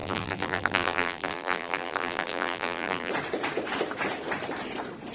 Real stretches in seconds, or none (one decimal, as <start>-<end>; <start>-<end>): 3.1-5.1